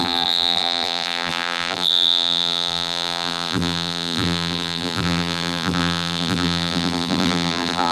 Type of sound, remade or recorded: remade